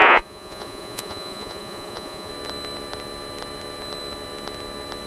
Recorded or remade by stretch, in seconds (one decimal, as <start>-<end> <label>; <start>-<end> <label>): 0.0-2.3 remade; 2.3-5.1 recorded